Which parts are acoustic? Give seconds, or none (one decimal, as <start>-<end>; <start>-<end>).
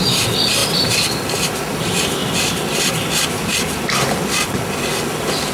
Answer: 0.0-5.5